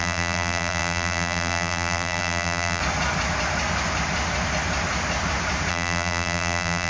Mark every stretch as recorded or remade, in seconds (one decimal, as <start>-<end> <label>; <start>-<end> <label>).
0.0-2.8 remade; 2.8-5.7 recorded; 5.7-6.9 remade